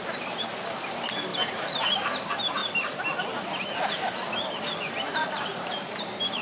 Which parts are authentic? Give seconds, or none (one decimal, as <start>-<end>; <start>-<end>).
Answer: 0.0-5.5